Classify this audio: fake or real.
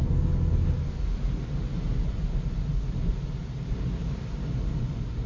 real